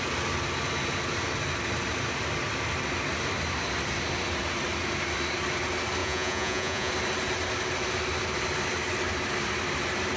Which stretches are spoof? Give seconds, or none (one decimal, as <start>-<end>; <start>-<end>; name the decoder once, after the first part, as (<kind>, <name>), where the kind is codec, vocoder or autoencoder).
6.0-6.9 (vocoder, Vocos)